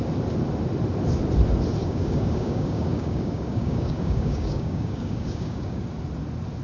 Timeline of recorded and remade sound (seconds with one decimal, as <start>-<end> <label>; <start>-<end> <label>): 0.0-1.8 recorded; 1.8-5.8 remade; 5.8-6.6 recorded